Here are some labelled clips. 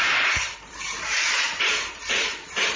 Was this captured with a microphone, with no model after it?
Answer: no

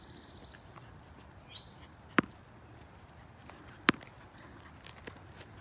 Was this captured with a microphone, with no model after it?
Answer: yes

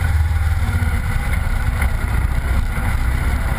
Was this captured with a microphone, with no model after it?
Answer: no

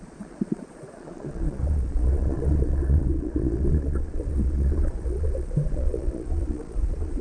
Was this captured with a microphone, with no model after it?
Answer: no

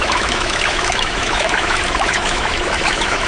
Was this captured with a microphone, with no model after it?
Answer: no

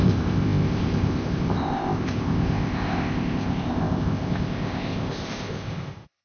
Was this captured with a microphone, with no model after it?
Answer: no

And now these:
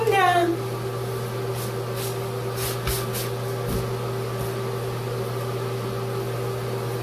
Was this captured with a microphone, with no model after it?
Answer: yes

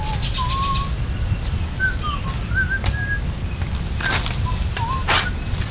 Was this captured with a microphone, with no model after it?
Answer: yes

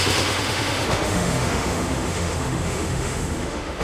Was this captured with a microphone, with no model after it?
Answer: no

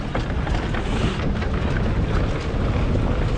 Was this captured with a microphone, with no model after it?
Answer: yes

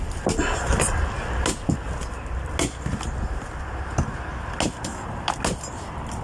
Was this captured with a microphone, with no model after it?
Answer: yes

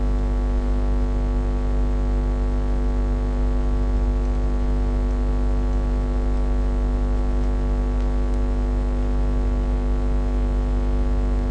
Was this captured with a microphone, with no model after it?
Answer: yes